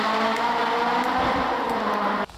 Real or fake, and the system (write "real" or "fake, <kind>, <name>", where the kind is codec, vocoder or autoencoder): fake, vocoder, BigVGAN v2